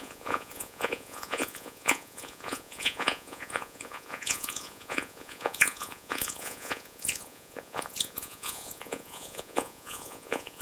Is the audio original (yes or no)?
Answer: no